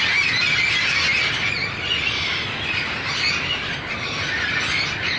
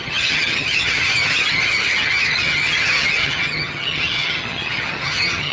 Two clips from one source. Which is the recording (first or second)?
first